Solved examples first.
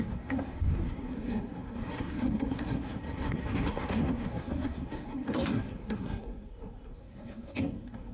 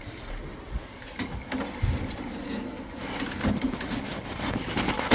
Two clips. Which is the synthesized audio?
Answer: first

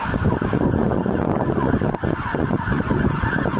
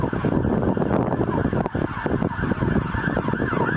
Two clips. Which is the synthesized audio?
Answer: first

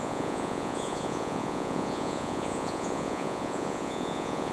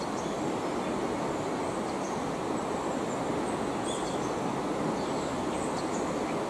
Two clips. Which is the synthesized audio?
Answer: first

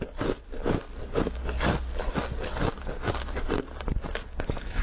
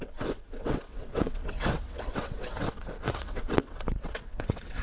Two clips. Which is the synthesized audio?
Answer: second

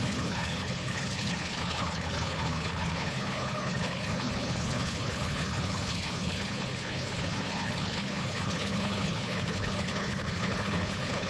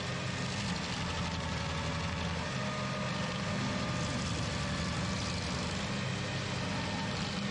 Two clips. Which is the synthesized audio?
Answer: first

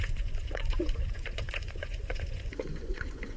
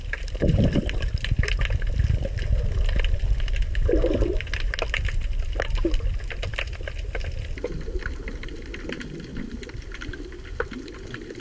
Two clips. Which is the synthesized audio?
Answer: first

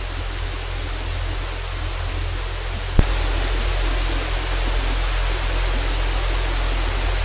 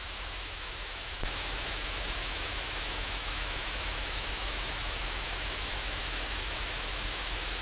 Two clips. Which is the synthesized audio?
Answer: second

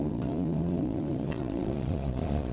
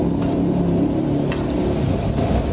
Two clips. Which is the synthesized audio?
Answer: first